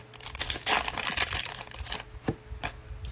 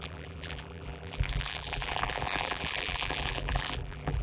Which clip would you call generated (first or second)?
second